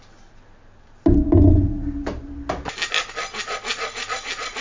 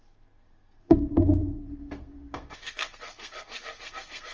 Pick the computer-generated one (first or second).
second